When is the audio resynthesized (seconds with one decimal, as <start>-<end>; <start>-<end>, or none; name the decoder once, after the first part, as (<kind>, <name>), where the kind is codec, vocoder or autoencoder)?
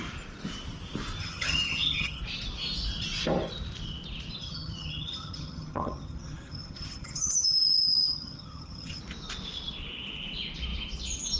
1.2-2.2 (vocoder, HiFi-GAN); 4.4-9.0